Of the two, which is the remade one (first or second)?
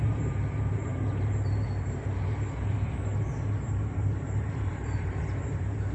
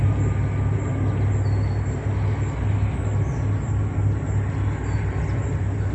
first